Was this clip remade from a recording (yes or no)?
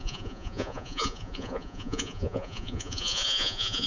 yes